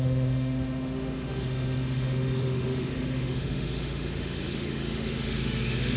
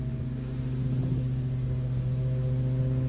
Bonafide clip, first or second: second